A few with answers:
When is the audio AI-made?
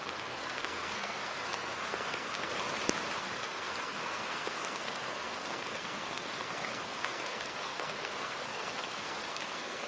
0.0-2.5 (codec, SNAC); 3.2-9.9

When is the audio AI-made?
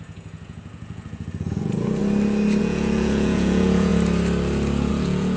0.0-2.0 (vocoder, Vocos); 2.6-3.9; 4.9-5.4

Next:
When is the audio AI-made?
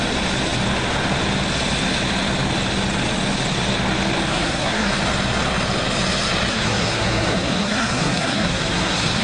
4.3-4.9 (codec, SNAC); 6.5-9.2